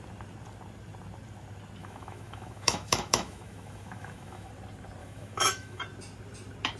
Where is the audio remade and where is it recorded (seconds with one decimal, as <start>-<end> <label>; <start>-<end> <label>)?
0.0-1.8 recorded; 1.8-4.5 remade; 4.5-5.0 recorded; 5.0-5.8 remade; 5.8-6.8 recorded